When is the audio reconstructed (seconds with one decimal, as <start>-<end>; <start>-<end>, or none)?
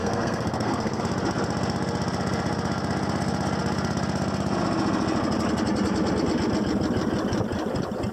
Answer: 0.0-1.0